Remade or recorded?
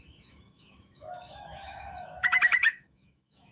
remade